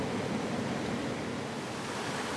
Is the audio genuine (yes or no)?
yes